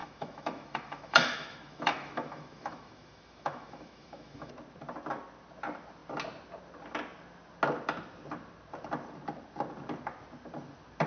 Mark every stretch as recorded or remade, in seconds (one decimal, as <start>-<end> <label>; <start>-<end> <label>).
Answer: 0.0-4.5 remade; 4.5-11.1 recorded